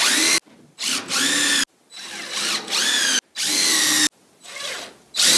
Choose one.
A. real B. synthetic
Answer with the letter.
A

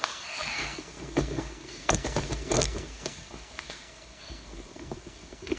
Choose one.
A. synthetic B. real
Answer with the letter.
A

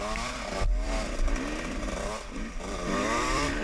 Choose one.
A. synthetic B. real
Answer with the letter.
A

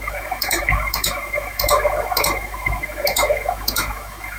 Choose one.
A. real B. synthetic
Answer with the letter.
B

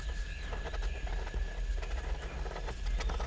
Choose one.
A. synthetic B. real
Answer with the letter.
B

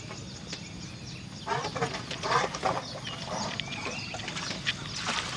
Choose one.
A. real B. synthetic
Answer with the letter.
A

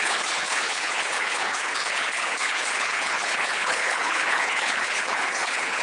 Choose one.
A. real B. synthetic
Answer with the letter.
B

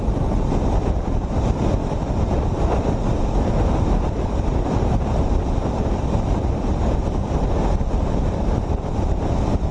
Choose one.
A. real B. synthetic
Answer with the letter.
B